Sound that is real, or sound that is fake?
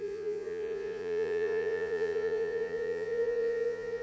fake